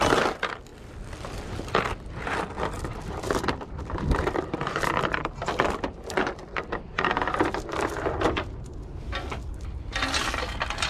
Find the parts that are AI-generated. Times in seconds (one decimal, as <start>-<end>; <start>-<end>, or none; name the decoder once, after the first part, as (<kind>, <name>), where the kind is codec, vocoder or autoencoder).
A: 0.7-5.2 (vocoder, BigVGAN v2)